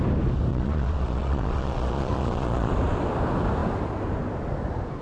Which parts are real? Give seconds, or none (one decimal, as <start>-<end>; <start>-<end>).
0.0-0.5; 2.7-5.0